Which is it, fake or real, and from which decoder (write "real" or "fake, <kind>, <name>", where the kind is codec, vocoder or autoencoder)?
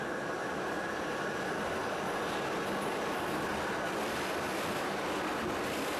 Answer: real